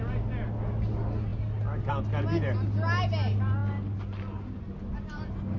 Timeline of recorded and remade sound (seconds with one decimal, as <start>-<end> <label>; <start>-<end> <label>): 0.0-5.6 recorded